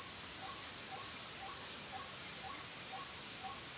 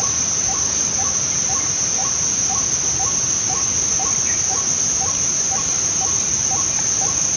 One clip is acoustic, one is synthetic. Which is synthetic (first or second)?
second